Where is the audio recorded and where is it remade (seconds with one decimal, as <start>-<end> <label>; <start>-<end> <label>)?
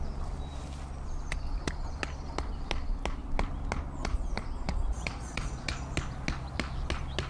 0.0-4.0 recorded; 4.0-5.7 remade; 5.7-7.3 recorded